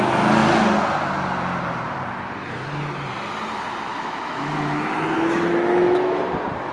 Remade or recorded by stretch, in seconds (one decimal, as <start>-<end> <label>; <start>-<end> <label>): 0.0-3.9 recorded; 3.9-6.2 remade; 6.2-6.7 recorded

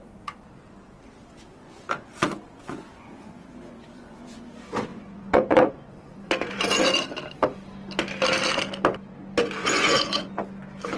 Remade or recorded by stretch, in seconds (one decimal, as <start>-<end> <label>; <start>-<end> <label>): 0.0-1.5 recorded; 1.5-4.5 remade; 4.5-4.9 recorded; 4.9-6.8 remade; 6.8-9.6 recorded; 9.6-10.3 remade; 10.3-11.0 recorded